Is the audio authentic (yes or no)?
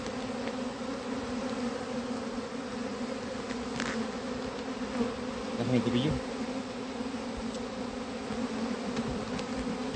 yes